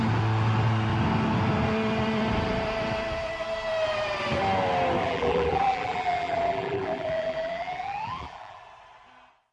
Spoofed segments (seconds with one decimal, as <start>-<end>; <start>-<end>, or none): 5.0-8.6

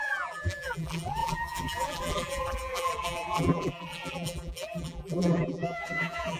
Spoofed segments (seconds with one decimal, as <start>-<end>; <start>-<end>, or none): 0.0-6.4